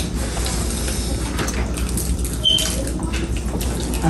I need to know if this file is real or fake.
real